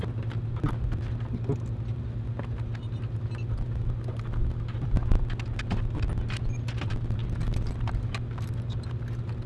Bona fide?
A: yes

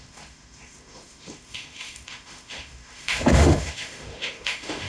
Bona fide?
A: no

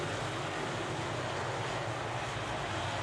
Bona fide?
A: yes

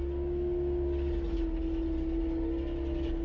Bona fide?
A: yes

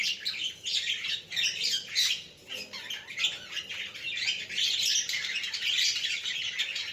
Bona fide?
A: yes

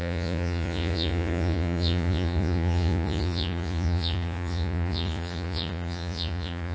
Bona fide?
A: no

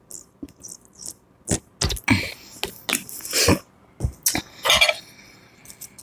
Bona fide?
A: yes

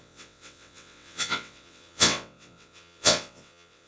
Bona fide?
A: no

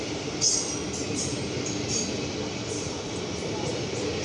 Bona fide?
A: yes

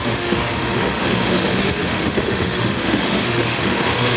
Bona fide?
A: no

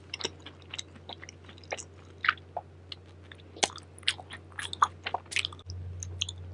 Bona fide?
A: yes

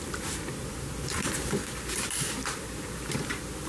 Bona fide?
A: no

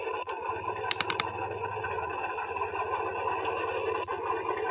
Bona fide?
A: yes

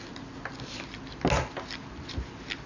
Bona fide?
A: yes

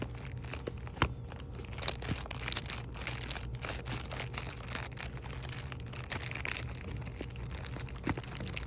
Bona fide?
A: yes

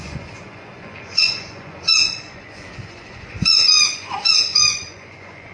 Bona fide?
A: no